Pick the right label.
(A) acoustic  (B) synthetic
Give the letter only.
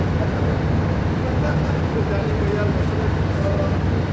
A